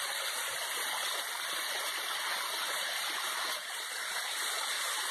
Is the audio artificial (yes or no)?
no